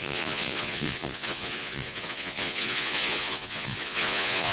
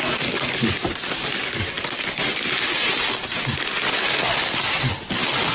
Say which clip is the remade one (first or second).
first